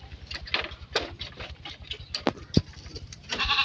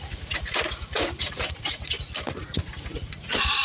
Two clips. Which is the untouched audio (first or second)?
first